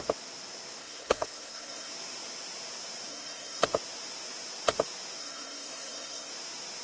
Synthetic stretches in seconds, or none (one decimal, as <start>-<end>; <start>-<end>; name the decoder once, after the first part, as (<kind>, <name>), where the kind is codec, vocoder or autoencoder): 0.8-1.9 (codec, SNAC); 3.1-3.6; 5.2-6.3